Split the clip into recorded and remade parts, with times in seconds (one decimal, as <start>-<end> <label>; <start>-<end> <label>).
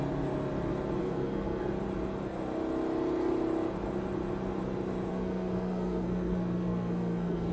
0.0-1.0 recorded; 1.0-1.7 remade; 1.7-5.1 recorded; 5.1-7.5 remade